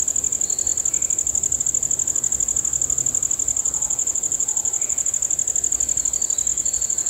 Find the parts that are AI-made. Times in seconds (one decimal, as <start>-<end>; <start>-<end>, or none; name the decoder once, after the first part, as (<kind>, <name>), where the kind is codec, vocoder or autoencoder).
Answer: 3.6-5.1 (vocoder, Vocos); 6.5-7.1